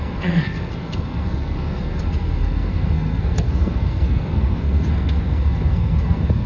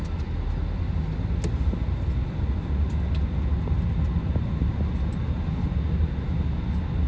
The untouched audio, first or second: second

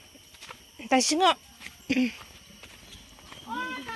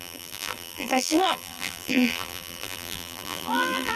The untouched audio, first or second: first